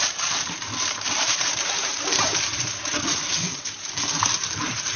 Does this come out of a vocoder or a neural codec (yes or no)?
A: yes